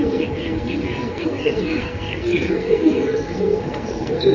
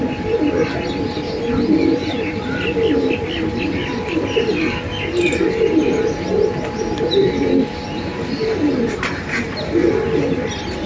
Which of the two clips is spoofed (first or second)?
first